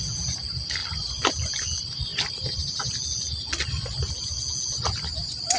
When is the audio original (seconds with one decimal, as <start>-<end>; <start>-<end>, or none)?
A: 0.0-5.6